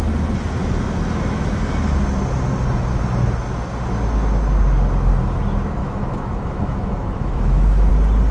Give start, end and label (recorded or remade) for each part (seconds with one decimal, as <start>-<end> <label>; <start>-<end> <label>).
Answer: 0.0-5.8 recorded; 5.8-7.9 remade; 7.9-8.3 recorded